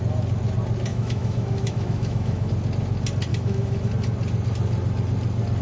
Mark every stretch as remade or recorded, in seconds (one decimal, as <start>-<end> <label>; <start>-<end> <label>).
0.0-0.9 recorded; 0.9-2.5 remade; 2.5-3.3 recorded; 3.3-3.9 remade; 3.9-5.6 recorded